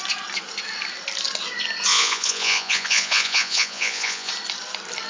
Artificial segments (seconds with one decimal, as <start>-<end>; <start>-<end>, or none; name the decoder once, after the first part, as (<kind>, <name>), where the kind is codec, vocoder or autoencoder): 1.9-4.3 (vocoder, Vocos)